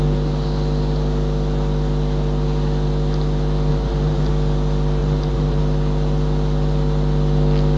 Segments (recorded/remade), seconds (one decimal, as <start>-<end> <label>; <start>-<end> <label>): 0.0-3.7 recorded; 3.7-4.3 remade; 4.3-5.0 recorded; 5.0-5.6 remade; 5.6-7.8 recorded